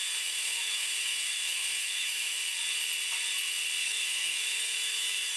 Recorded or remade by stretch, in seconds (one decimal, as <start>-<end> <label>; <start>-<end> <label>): 0.0-2.4 remade; 2.4-3.8 recorded; 3.8-5.4 remade